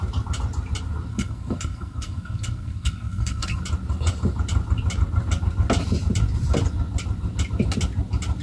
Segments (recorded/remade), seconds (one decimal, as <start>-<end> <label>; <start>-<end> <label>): 0.0-1.1 recorded; 1.1-3.6 remade; 3.6-8.4 recorded